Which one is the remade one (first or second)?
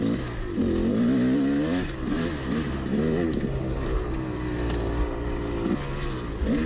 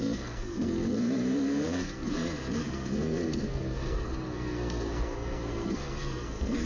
second